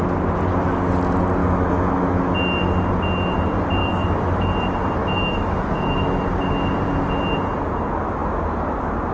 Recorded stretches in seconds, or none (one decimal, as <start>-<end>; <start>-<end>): 0.0-1.4; 2.2-3.8; 4.5-5.0; 6.1-9.1